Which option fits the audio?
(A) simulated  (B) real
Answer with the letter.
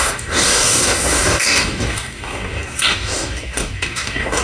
A